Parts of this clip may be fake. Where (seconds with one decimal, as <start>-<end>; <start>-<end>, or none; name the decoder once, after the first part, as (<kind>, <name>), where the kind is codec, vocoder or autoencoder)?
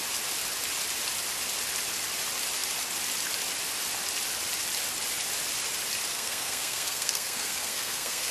6.1-8.3 (codec, SNAC)